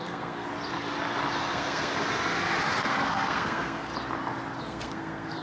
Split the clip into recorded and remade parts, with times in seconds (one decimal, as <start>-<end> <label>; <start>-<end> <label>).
0.0-0.5 remade; 0.5-1.4 recorded; 1.4-1.9 remade; 1.9-2.8 recorded; 2.8-3.9 remade; 3.9-4.6 recorded; 4.6-5.4 remade